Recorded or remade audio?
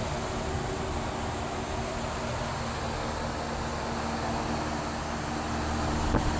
recorded